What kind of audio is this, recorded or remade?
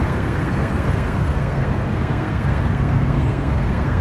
remade